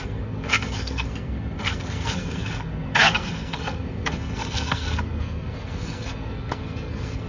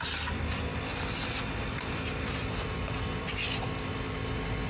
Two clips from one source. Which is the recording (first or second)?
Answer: second